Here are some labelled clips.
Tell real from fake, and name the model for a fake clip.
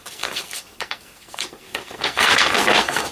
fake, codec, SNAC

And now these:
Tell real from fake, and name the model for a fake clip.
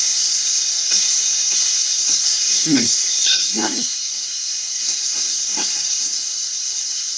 fake, codec, SNAC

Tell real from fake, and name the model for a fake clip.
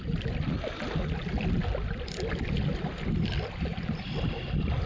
real